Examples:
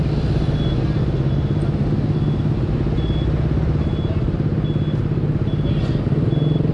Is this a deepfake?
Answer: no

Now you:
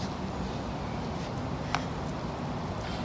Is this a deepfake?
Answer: no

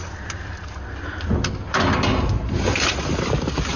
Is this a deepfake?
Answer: no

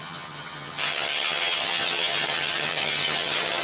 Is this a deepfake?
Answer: yes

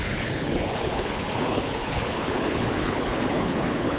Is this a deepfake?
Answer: yes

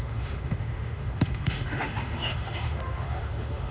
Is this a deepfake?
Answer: yes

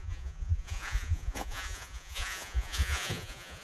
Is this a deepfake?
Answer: yes